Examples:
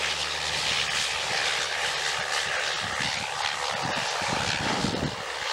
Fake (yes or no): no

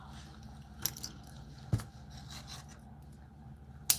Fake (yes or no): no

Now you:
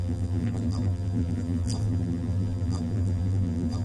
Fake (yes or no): yes